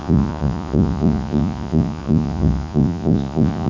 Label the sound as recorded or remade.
remade